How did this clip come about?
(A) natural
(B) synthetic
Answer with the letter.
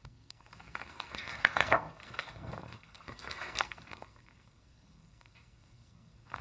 B